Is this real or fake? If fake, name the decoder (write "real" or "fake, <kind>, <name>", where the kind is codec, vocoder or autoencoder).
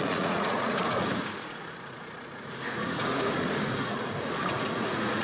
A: fake, vocoder, Vocos